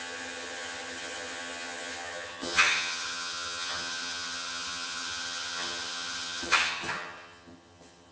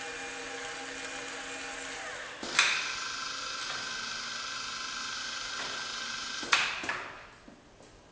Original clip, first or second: second